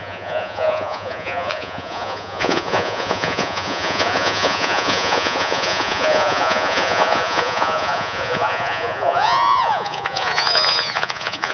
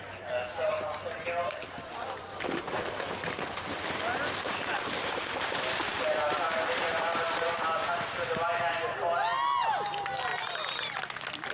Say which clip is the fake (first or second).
first